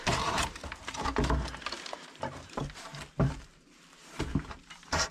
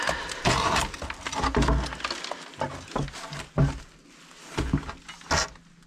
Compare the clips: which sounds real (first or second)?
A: second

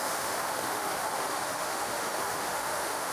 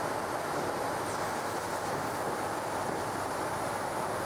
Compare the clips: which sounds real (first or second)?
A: second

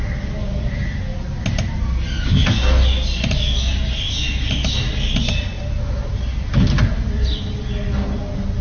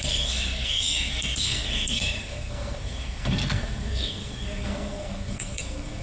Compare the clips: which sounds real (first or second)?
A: first